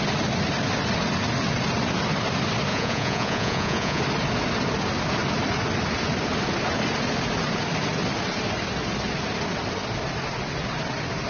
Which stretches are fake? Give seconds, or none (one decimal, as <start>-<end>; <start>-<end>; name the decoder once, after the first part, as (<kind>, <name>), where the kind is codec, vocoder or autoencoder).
2.7-4.0 (vocoder, Vocos)